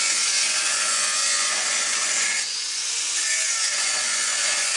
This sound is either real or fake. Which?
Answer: fake